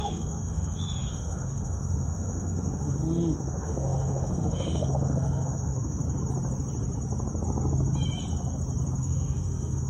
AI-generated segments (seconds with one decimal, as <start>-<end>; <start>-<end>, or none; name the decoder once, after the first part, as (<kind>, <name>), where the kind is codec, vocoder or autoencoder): 0.0-6.0 (autoencoder, DAC-VAE); 9.0-9.9